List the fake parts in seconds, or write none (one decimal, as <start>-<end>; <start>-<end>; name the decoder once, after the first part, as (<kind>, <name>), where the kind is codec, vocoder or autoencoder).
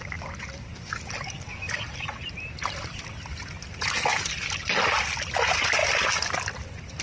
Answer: none